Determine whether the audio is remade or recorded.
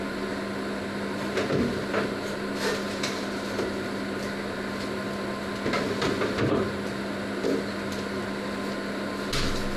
recorded